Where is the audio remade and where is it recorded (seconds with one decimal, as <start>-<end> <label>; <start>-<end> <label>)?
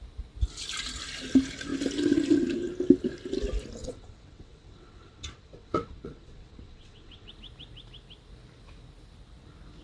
0.0-3.8 recorded; 3.8-7.3 remade; 7.3-9.8 recorded